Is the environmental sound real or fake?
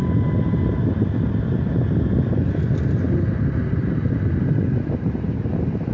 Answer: real